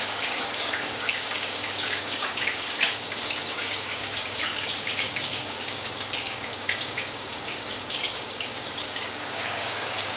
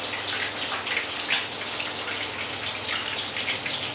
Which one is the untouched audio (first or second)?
second